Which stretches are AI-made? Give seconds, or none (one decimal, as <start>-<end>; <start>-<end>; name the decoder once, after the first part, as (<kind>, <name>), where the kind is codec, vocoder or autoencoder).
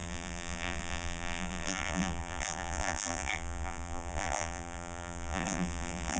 0.0-6.2 (vocoder, BigVGAN v2)